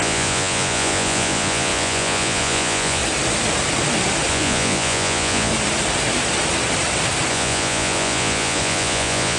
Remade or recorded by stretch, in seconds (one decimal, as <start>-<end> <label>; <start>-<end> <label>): 0.0-3.0 remade; 3.0-4.3 recorded; 4.3-5.5 remade; 5.5-7.3 recorded; 7.3-9.4 remade